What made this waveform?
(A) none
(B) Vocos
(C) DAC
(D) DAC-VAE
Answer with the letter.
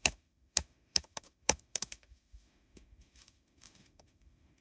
D